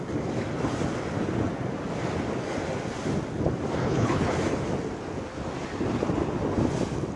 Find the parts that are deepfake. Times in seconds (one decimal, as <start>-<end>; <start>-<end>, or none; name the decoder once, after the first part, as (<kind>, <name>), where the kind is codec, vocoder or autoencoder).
3.8-4.3 (codec, HILCodec)